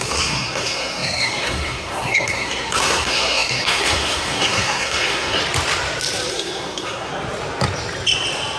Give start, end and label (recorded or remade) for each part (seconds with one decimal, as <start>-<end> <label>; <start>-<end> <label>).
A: 0.0-5.4 remade; 5.4-6.3 recorded; 6.3-7.1 remade; 7.1-8.6 recorded